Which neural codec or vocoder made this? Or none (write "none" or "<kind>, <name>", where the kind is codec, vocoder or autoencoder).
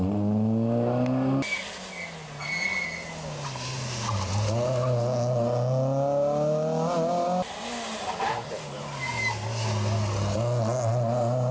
none